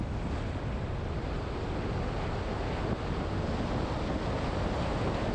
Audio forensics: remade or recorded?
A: recorded